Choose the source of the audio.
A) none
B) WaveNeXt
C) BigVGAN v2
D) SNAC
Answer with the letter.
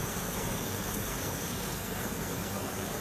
D